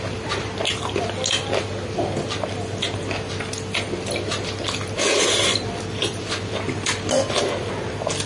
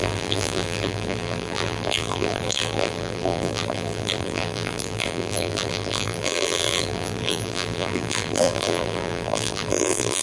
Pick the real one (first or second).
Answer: first